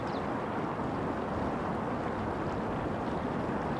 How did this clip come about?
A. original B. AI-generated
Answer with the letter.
A